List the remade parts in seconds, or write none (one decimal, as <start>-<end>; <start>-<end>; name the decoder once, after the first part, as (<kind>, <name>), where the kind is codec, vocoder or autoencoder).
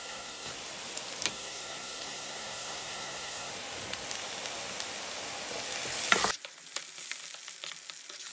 0.0-0.5 (codec, SNAC); 1.3-3.5